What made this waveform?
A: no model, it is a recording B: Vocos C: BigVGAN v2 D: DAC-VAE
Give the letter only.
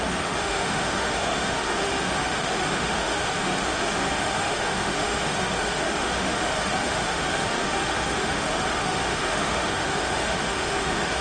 D